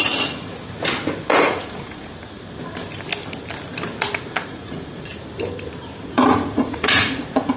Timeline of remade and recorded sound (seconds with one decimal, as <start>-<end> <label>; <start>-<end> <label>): 0.0-0.5 remade; 0.5-1.3 recorded; 1.3-2.1 remade; 2.1-4.5 recorded; 4.5-5.1 remade; 5.1-6.0 recorded; 6.0-7.6 remade